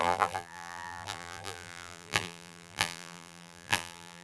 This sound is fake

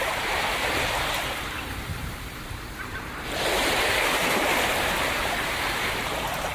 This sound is fake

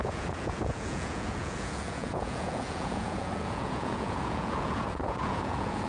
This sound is fake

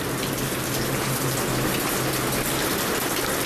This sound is real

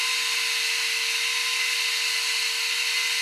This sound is real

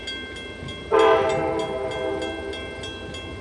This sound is real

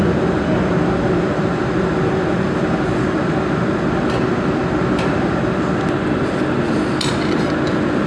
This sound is real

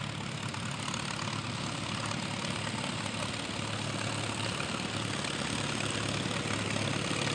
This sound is real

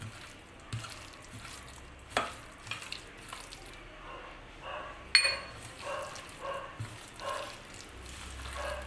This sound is real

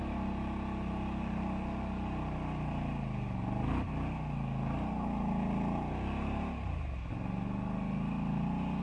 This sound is real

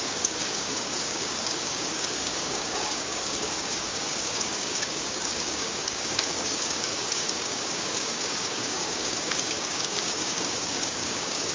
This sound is fake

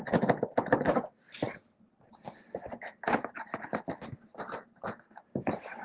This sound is real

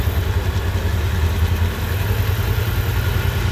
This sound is real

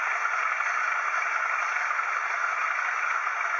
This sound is real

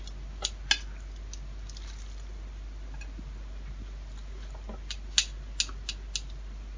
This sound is real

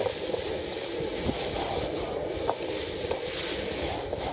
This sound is real